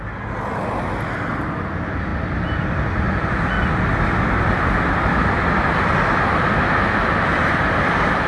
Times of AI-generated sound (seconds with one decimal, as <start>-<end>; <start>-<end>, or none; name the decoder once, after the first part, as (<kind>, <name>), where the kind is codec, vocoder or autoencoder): none